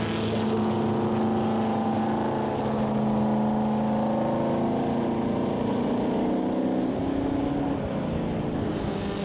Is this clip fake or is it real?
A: real